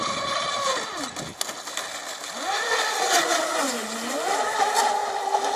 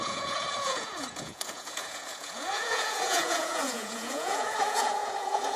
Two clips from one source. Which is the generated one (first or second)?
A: second